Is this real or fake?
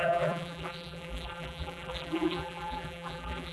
fake